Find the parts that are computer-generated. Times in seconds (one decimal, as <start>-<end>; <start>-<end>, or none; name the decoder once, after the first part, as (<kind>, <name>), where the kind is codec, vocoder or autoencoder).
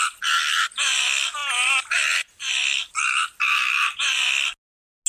none